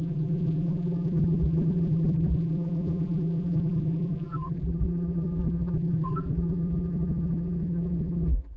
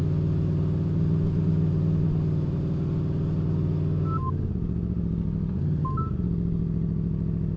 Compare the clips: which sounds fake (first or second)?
first